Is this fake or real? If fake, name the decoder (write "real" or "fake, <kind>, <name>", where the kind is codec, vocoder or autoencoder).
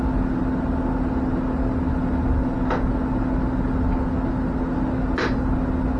real